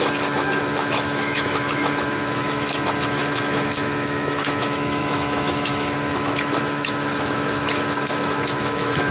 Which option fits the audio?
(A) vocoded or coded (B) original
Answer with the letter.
A